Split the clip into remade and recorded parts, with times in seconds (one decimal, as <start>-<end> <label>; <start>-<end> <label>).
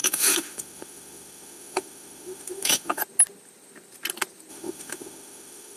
0.0-3.0 remade; 3.0-4.5 recorded; 4.5-5.8 remade